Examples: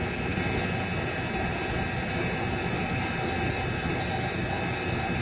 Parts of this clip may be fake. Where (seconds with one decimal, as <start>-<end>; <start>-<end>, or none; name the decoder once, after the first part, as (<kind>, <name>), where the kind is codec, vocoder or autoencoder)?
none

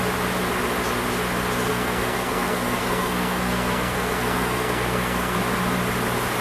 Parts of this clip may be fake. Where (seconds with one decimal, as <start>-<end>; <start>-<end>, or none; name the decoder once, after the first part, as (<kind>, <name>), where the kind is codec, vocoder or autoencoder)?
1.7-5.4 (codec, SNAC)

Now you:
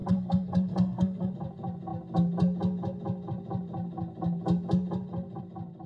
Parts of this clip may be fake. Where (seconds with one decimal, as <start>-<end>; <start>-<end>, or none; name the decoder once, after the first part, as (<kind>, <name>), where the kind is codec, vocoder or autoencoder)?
0.0-1.3 (codec, SNAC)

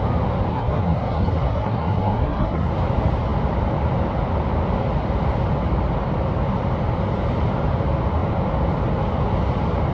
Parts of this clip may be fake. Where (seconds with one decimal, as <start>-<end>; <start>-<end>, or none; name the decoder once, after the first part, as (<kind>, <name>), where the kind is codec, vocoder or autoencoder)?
0.5-2.7 (codec, SNAC)